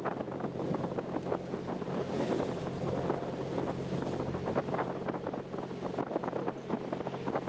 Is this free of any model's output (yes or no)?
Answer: yes